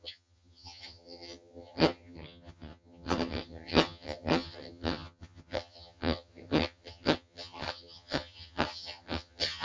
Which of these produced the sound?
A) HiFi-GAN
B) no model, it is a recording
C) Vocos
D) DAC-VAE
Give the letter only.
A